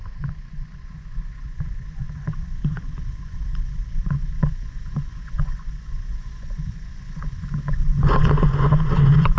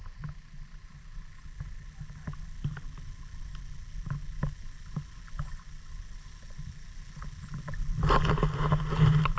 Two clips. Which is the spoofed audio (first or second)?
first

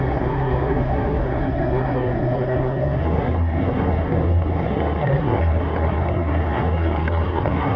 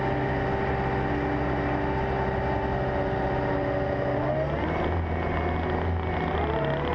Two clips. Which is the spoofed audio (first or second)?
first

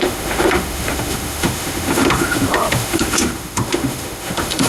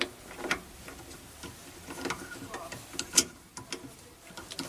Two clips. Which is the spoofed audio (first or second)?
first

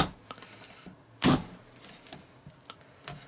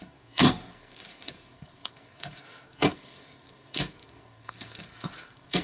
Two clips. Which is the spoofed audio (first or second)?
second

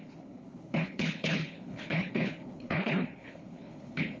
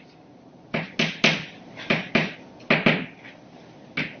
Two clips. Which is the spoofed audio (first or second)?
first